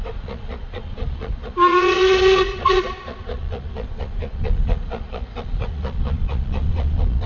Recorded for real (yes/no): no